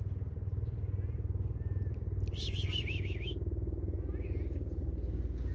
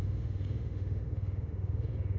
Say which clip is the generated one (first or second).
second